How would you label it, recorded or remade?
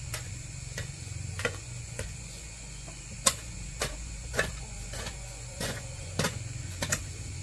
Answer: remade